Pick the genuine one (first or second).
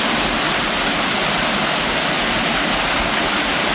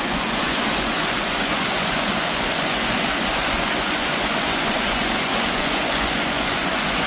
first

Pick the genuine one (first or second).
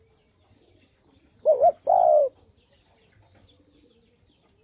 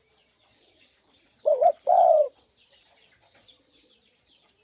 first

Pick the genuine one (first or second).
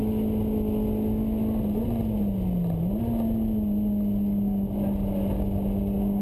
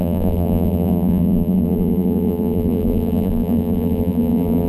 first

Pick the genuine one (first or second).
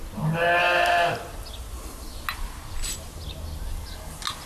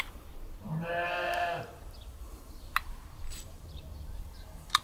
first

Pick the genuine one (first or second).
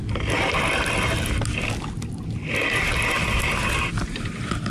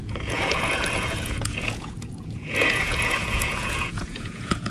first